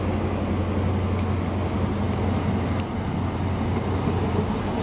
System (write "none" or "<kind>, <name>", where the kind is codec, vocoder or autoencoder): none